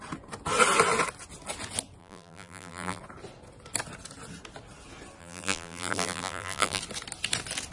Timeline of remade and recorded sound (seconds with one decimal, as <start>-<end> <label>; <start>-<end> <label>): 0.0-2.0 recorded; 2.0-3.0 remade; 3.0-5.2 recorded; 5.2-6.8 remade; 6.8-7.7 recorded

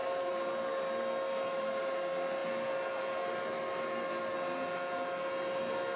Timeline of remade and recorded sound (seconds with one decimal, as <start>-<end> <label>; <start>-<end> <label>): 0.0-6.0 recorded

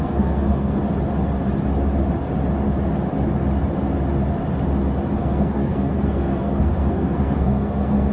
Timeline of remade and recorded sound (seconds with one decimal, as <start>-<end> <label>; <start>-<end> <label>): 0.0-0.8 remade; 0.8-5.2 recorded; 5.2-8.1 remade

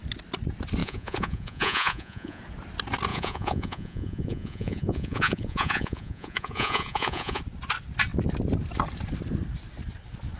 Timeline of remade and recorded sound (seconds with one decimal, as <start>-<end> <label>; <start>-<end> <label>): 0.0-0.8 recorded; 0.8-2.4 remade; 2.4-3.1 recorded; 3.1-7.4 remade; 7.4-10.4 recorded

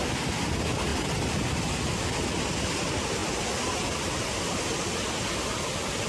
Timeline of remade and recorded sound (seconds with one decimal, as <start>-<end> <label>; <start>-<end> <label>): 0.0-6.1 recorded

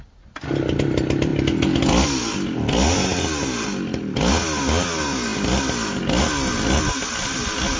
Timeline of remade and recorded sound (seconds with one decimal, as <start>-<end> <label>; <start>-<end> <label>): 0.0-7.8 recorded